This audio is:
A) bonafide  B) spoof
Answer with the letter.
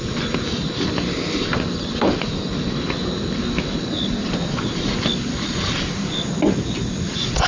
A